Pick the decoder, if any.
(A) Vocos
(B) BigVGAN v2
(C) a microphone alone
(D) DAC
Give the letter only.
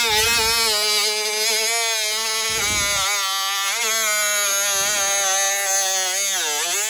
C